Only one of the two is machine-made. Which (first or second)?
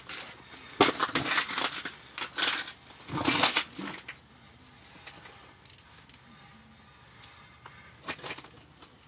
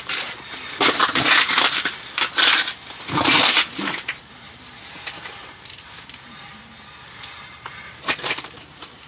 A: second